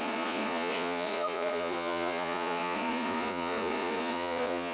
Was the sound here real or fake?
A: fake